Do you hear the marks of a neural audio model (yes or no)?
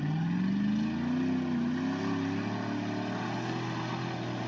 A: no